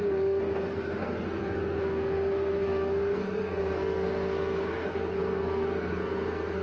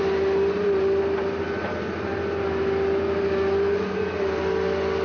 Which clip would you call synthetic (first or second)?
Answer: first